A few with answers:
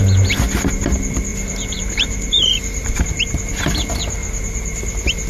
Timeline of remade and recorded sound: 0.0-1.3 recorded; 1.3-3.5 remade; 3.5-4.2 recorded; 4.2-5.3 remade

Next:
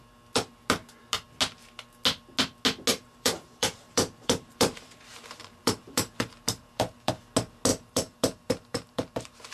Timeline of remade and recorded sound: 0.0-2.9 recorded; 2.9-7.1 remade; 7.1-7.7 recorded; 7.7-9.5 remade

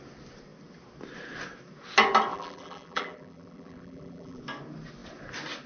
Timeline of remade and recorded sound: 0.0-2.3 recorded; 2.3-4.4 remade; 4.4-5.7 recorded